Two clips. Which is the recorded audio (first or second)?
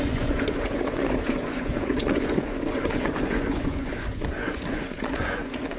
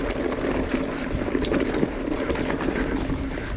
second